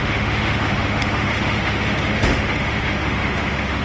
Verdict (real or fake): fake